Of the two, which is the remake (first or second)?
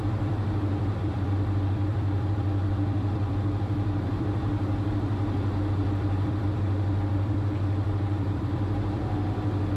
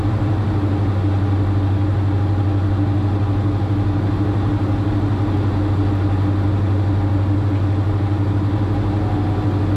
first